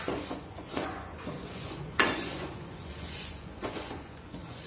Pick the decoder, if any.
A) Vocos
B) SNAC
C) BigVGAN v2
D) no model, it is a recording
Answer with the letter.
A